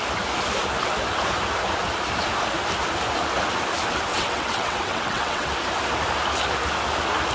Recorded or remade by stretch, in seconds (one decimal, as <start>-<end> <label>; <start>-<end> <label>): 0.0-4.1 recorded; 4.1-5.5 remade; 5.5-7.3 recorded